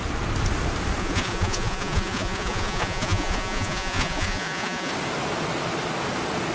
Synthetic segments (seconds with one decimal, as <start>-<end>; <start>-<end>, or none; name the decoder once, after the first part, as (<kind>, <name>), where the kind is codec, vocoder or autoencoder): 1.0-4.9 (vocoder, Vocos)